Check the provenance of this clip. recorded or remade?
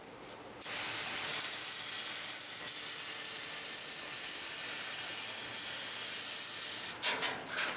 recorded